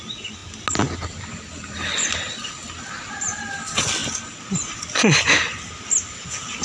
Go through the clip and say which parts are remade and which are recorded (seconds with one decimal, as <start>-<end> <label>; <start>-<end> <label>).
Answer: 0.0-6.6 recorded

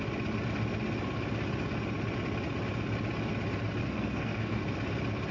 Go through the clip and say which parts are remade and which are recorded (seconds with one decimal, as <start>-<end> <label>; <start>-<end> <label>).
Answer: 0.0-3.8 recorded; 3.8-4.6 remade; 4.6-5.3 recorded